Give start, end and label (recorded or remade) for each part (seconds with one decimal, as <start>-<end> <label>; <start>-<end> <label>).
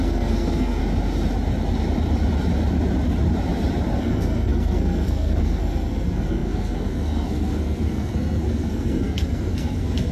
0.0-0.8 remade; 0.8-4.0 recorded; 4.0-10.1 remade